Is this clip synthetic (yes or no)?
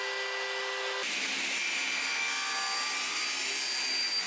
no